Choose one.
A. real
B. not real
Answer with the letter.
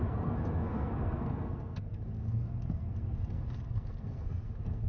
B